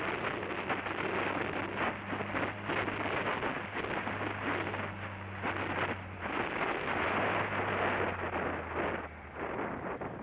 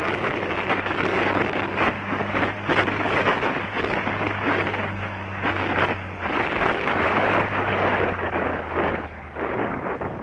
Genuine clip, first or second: first